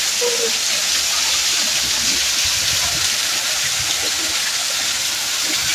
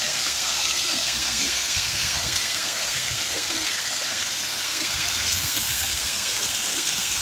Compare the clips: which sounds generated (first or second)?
second